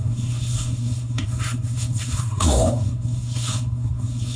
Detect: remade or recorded remade